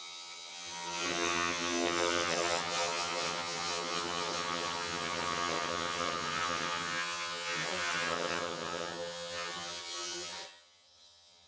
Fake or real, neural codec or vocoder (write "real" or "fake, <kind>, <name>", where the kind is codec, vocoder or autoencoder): fake, vocoder, HiFi-GAN